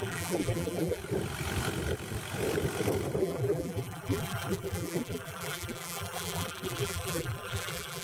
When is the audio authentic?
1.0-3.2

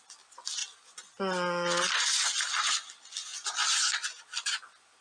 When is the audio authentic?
0.0-5.0

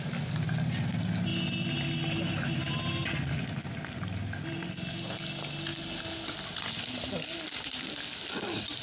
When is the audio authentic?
0.0-8.8

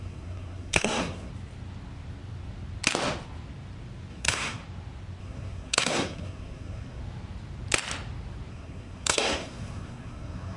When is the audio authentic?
1.3-4.1; 4.6-5.2; 7.0-8.5

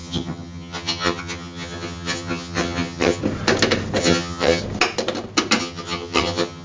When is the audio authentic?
3.2-4.0; 4.6-5.6

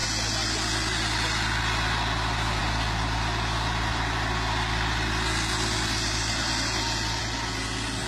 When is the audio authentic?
0.0-8.1

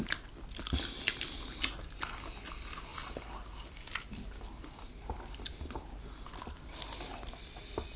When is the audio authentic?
0.0-8.0

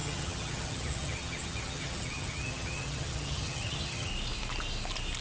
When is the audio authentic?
4.1-5.2